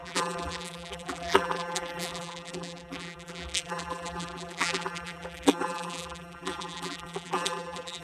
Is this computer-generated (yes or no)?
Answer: yes